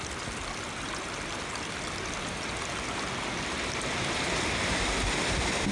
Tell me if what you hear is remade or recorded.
recorded